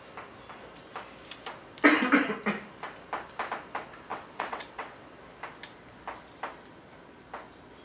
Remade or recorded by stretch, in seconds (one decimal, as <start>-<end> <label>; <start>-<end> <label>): 0.0-4.1 recorded; 4.1-5.1 remade; 5.1-7.8 recorded